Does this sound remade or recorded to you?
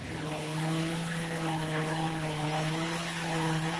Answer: remade